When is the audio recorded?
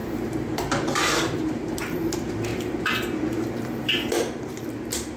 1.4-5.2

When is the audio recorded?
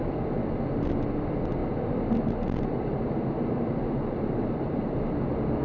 0.0-1.6; 5.0-5.6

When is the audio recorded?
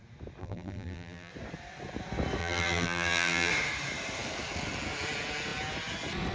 0.0-0.4; 1.3-2.4; 3.5-6.3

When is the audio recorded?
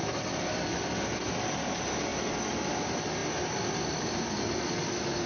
0.8-2.1; 2.6-5.3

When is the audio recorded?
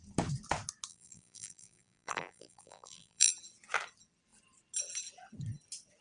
0.0-0.9; 3.3-6.0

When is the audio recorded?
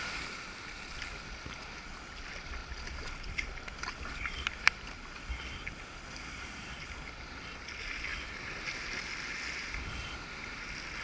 0.0-11.0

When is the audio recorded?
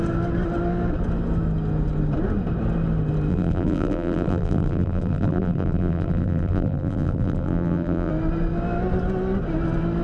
0.0-3.3; 8.1-10.0